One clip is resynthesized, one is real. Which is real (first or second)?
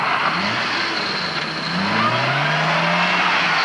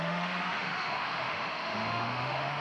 first